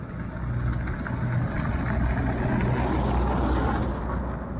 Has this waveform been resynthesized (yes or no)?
no